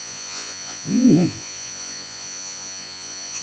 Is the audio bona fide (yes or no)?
no